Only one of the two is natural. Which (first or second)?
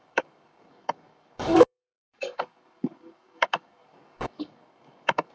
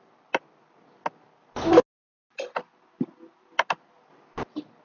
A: second